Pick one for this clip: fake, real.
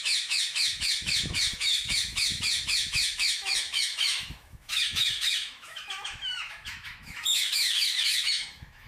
fake